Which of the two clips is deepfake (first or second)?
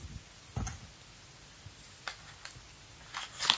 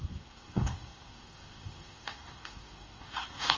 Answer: second